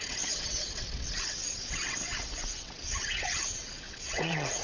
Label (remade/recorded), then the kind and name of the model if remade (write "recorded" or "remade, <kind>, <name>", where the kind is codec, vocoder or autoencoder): remade, vocoder, WaveNeXt